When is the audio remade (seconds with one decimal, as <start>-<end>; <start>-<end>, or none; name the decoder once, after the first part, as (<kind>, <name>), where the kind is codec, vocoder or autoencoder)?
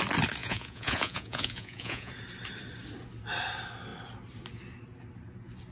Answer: 0.4-2.1 (vocoder, Vocos)